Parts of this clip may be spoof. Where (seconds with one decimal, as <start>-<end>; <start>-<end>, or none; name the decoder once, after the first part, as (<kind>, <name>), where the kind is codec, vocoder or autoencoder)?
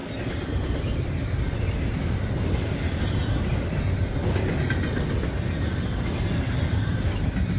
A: 0.0-4.6 (vocoder, BigVGAN v2)